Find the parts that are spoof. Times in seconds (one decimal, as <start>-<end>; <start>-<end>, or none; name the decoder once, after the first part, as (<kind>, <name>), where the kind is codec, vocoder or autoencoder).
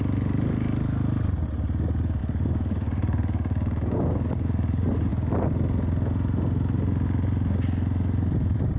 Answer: 2.2-5.1 (codec, DAC)